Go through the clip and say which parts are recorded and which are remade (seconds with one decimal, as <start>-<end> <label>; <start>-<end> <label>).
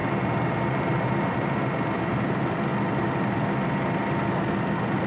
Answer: 0.0-2.7 remade; 2.7-4.5 recorded; 4.5-5.1 remade